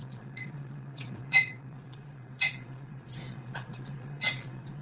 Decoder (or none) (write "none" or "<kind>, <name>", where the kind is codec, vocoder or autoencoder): vocoder, Vocos